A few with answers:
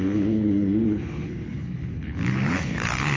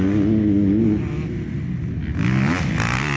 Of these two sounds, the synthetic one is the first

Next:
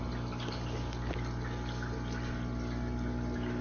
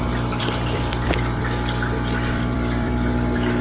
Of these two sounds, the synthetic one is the second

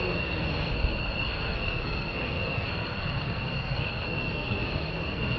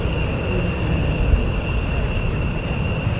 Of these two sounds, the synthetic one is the first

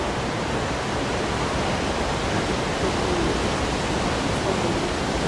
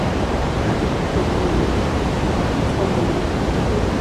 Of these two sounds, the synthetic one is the second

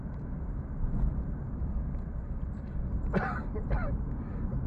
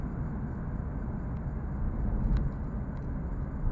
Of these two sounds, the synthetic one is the first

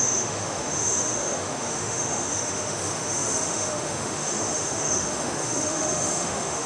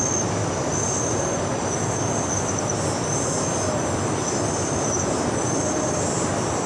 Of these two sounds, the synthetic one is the first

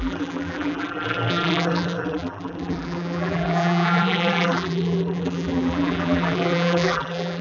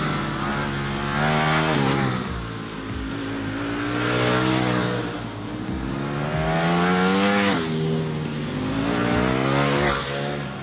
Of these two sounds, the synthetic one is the first